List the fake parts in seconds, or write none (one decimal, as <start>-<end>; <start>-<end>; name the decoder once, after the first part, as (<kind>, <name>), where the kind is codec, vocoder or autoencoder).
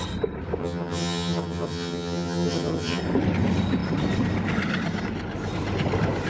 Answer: 0.6-3.0 (vocoder, HiFi-GAN)